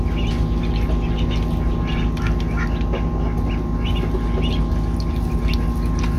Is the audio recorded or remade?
recorded